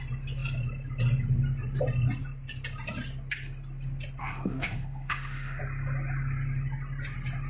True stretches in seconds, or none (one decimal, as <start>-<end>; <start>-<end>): 0.0-4.2; 5.6-7.5